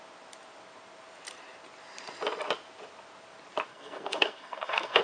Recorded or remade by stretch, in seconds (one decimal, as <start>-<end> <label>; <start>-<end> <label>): 0.0-3.7 recorded; 3.7-5.0 remade